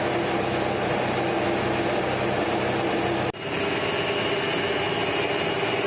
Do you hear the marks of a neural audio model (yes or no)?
no